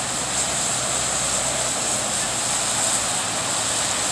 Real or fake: real